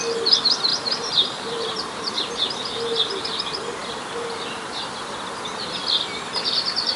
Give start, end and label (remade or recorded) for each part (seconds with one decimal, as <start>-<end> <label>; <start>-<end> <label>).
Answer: 0.0-0.7 recorded; 0.7-2.1 remade; 2.1-7.0 recorded